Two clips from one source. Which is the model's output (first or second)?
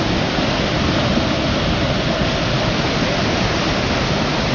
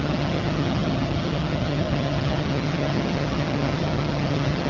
second